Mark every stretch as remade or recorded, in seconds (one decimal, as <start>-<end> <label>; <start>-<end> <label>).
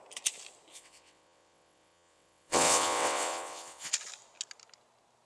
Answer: 0.0-0.7 recorded; 0.7-3.9 remade; 3.9-5.3 recorded